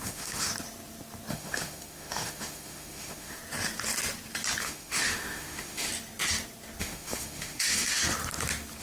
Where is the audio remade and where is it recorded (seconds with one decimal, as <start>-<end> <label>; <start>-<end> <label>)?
0.0-0.5 remade; 0.5-1.3 recorded; 1.3-3.4 remade; 3.4-4.6 recorded; 4.6-5.9 remade; 5.9-6.8 recorded; 6.8-8.0 remade; 8.0-8.8 recorded

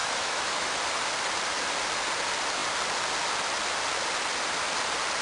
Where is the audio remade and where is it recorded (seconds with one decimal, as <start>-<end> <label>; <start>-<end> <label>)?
0.0-0.8 remade; 0.8-5.2 recorded

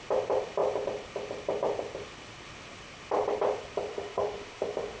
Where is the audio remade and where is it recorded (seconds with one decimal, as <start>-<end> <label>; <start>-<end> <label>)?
0.0-3.9 recorded; 3.9-5.0 remade

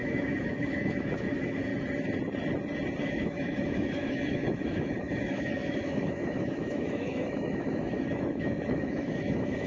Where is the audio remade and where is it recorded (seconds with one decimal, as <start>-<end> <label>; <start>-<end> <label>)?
0.0-1.7 remade; 1.7-3.0 recorded; 3.0-9.7 remade

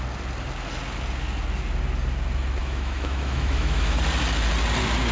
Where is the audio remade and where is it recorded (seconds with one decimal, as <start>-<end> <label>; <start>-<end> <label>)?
0.0-2.6 recorded; 2.6-4.0 remade; 4.0-5.1 recorded